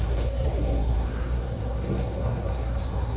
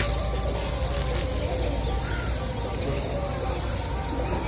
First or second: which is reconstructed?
first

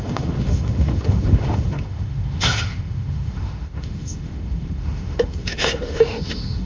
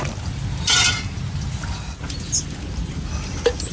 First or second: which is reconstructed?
first